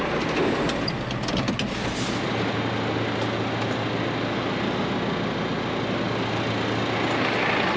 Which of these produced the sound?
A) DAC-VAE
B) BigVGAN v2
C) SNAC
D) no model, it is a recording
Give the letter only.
D